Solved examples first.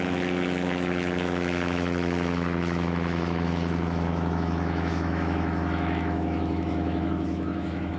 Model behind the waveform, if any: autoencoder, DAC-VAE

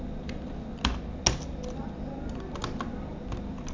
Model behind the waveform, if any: none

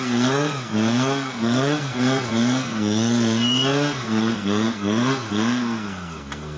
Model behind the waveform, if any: codec, SNAC